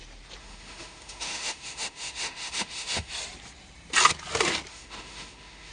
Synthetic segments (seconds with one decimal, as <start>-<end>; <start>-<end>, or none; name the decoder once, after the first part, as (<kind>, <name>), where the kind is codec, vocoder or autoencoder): 0.4-3.1 (autoencoder, DAC-VAE); 4.7-5.7